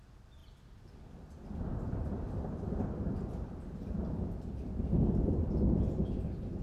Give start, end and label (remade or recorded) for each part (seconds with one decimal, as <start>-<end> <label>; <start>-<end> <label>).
0.0-6.6 recorded